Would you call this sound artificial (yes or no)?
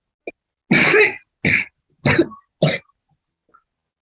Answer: no